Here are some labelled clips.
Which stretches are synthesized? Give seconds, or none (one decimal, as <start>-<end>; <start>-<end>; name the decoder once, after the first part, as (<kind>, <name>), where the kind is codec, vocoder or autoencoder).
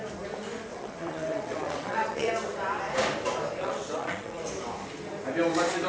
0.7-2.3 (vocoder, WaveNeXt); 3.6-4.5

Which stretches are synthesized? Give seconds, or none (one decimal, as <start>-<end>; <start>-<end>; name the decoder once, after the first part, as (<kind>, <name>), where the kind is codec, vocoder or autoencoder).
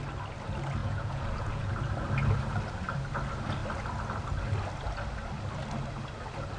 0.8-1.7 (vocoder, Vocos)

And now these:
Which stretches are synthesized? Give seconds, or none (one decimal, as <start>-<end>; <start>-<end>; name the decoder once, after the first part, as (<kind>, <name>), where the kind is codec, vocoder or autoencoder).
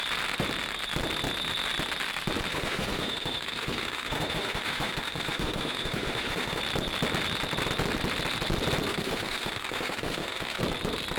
2.5-6.6 (autoencoder, DAC-VAE); 8.9-10.6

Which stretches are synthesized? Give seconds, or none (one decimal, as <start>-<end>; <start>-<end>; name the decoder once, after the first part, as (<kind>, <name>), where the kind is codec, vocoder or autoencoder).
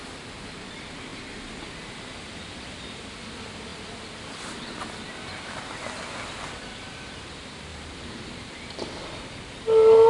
1.1-1.8 (vocoder, BigVGAN v2)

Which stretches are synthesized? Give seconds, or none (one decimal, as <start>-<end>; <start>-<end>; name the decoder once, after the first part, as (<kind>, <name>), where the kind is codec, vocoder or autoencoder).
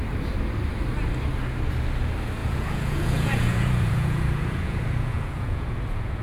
2.4-6.2 (vocoder, Vocos)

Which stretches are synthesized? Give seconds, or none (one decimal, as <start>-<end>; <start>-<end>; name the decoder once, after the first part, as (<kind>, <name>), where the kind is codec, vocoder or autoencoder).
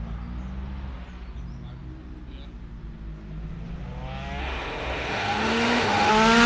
4.4-6.1 (autoencoder, DAC-VAE)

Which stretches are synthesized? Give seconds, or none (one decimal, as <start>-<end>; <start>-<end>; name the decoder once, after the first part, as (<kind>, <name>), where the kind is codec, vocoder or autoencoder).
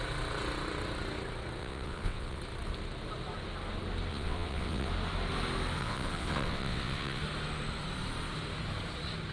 1.6-2.4 (vocoder, WaveNeXt); 4.1-4.9; 5.8-7.2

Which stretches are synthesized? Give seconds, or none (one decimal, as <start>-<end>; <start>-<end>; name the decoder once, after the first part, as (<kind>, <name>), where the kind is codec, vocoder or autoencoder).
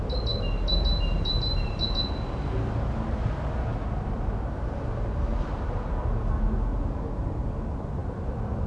0.7-1.8 (vocoder, BigVGAN v2); 3.7-5.9; 6.7-7.2